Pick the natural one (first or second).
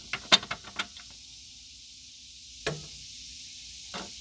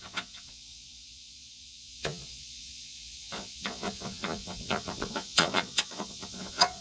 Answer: first